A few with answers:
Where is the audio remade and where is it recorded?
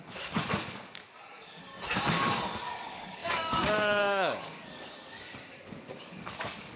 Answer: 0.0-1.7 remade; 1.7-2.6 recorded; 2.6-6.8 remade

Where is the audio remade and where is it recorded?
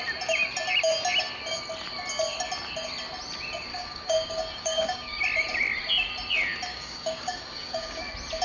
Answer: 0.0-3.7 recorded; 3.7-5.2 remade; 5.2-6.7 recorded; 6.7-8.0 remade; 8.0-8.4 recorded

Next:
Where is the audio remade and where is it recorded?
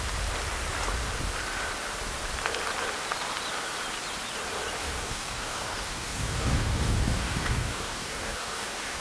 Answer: 0.0-4.8 recorded; 4.8-9.0 remade